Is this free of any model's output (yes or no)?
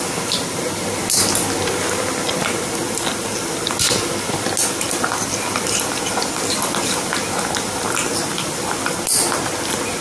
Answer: yes